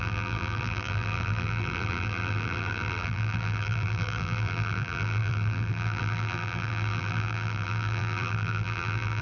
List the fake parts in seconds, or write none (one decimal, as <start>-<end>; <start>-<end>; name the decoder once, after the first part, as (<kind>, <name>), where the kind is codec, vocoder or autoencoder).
0.0-9.2 (vocoder, BigVGAN v2)